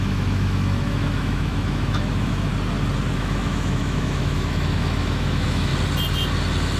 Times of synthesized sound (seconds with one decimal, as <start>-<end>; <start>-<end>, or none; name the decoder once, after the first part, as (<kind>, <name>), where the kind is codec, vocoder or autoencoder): 0.0-2.5 (autoencoder, DAC-VAE); 3.1-5.7